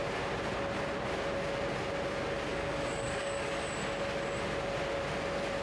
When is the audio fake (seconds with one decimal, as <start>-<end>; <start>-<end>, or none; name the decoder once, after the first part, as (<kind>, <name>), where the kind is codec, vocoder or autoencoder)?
2.5-3.6 (codec, DAC)